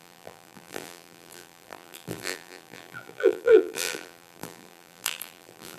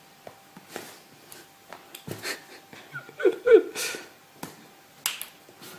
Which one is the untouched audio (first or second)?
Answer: second